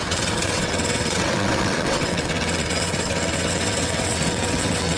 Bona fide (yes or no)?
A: no